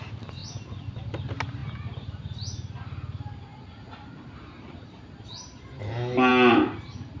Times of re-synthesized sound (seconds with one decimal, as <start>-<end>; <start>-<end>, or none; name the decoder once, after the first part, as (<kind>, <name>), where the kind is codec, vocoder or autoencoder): none